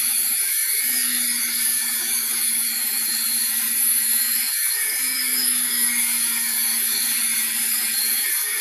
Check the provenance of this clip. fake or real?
fake